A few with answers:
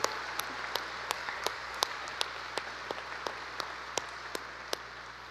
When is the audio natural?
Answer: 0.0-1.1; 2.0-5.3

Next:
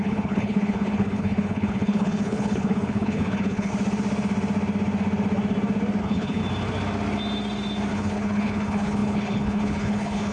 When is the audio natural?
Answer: 3.7-6.0; 6.4-7.9

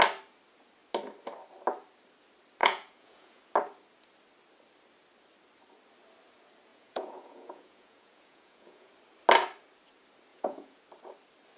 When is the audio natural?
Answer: 0.0-2.6; 3.4-6.7; 8.9-10.3; 10.8-11.6

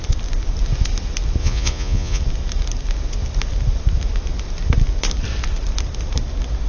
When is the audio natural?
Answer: 0.0-1.4; 2.2-6.7

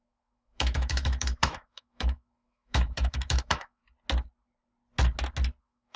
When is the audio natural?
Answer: 3.8-5.6